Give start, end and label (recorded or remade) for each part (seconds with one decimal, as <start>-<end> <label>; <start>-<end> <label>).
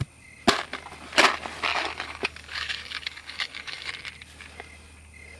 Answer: 0.0-1.7 recorded; 1.7-3.9 remade; 3.9-5.4 recorded